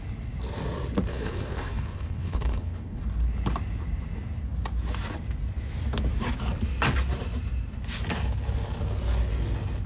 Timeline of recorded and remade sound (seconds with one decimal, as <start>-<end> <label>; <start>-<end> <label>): 0.0-1.1 recorded; 1.1-3.0 remade; 3.0-9.9 recorded